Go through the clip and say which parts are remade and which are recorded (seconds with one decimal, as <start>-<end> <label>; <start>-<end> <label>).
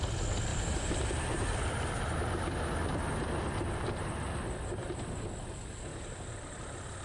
0.0-0.5 recorded; 0.5-1.5 remade; 1.5-7.0 recorded